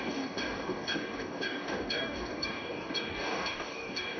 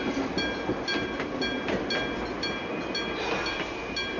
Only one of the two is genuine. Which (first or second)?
second